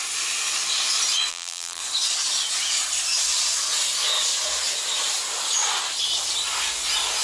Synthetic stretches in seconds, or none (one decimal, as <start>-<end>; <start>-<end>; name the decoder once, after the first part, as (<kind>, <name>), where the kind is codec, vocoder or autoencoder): 1.3-1.8 (vocoder, BigVGAN v2)